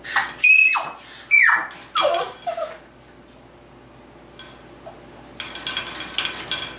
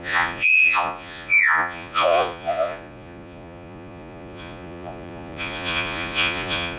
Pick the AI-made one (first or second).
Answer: second